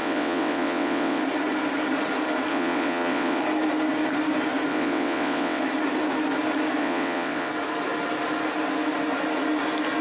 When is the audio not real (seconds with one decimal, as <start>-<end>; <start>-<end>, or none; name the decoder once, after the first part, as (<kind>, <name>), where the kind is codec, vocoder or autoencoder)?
0.0-1.2 (vocoder, WaveNeXt); 2.5-3.4; 4.7-5.6; 6.8-7.5

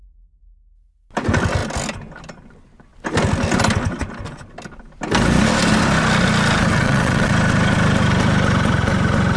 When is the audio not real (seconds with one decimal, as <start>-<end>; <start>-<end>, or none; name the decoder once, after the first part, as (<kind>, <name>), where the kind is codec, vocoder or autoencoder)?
6.7-7.3 (vocoder, WaveNeXt)

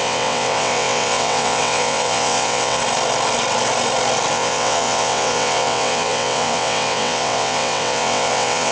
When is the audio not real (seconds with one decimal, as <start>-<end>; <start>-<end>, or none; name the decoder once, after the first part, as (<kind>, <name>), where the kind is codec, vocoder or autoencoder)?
0.0-2.8 (vocoder, WaveNeXt); 4.3-8.7

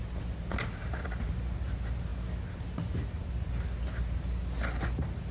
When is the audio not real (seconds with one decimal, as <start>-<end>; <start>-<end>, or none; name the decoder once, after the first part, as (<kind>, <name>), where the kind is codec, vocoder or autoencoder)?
none

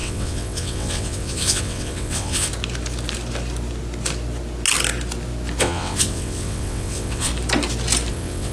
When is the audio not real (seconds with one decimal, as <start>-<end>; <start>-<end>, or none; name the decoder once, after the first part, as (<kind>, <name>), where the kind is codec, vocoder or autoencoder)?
0.0-2.5 (vocoder, WaveNeXt); 5.6-7.3; 8.1-8.5